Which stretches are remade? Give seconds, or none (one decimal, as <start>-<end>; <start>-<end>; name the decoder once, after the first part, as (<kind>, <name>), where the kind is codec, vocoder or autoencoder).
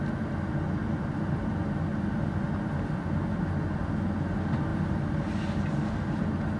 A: none